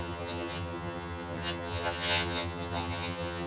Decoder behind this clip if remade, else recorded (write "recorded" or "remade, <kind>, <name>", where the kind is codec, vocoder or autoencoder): remade, vocoder, HiFi-GAN